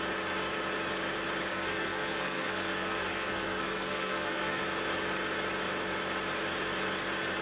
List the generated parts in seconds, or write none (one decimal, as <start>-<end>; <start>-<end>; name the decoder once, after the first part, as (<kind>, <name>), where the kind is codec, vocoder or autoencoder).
1.5-4.6 (codec, SNAC)